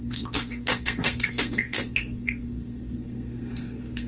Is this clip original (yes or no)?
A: no